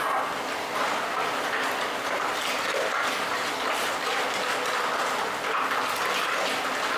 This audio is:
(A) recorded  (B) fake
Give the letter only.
A